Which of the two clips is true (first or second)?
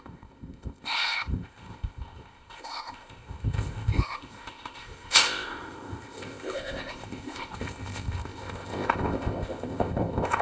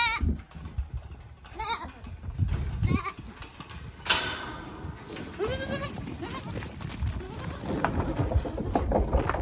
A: second